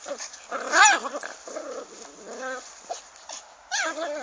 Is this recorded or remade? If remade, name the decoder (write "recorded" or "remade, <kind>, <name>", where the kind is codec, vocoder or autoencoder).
recorded